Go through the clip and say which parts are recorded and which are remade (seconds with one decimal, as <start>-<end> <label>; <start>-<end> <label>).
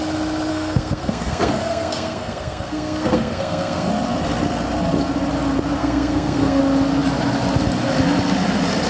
0.0-0.5 recorded; 0.5-3.9 remade; 3.9-5.8 recorded; 5.8-6.6 remade; 6.6-8.9 recorded